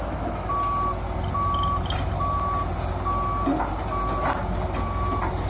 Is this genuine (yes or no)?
yes